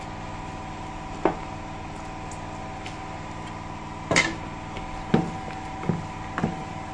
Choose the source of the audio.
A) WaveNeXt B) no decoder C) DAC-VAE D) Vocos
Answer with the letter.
B